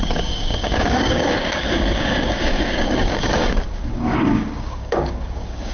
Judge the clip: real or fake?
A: fake